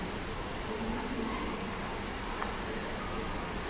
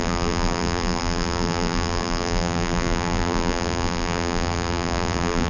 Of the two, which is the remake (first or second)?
second